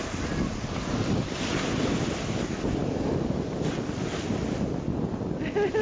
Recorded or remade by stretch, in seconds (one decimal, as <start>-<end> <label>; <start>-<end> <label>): 0.0-5.8 recorded